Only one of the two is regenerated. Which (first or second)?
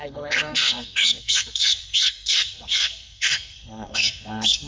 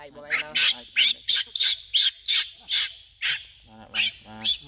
first